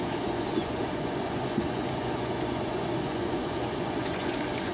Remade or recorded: remade